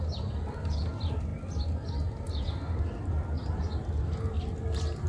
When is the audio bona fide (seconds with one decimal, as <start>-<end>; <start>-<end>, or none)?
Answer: 0.0-5.1